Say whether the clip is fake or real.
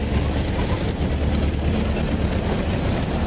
real